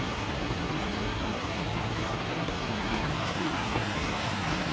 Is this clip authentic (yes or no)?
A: no